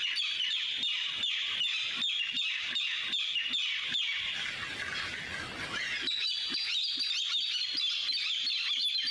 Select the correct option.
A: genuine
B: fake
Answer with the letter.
A